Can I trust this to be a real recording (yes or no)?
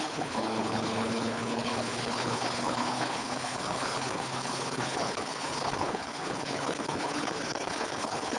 no